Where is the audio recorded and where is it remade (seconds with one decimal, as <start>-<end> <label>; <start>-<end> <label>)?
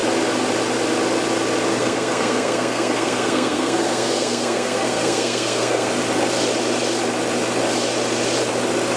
0.0-1.7 recorded; 1.7-5.9 remade; 5.9-9.0 recorded